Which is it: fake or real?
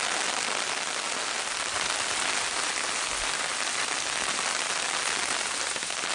real